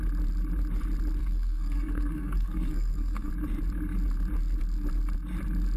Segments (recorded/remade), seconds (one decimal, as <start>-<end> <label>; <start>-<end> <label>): 0.0-1.2 recorded; 1.2-3.3 remade; 3.3-5.8 recorded